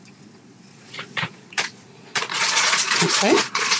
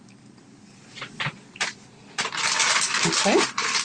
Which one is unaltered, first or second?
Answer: second